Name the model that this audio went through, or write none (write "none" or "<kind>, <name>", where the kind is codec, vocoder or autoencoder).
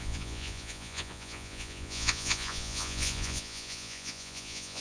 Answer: vocoder, Vocos